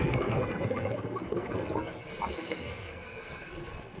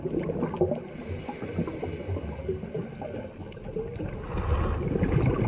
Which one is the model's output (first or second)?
first